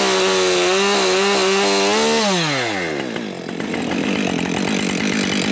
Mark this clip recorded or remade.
recorded